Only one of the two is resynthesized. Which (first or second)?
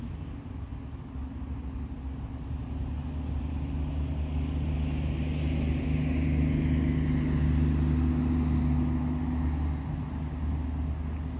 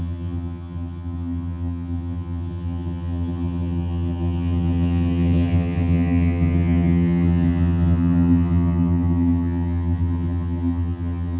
second